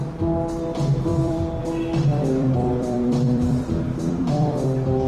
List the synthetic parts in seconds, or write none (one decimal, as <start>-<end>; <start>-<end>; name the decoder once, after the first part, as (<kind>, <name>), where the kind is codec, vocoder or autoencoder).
1.1-1.6 (vocoder, BigVGAN v2); 2.1-5.1